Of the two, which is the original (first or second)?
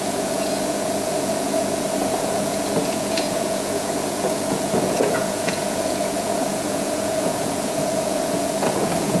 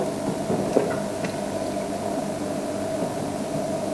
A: second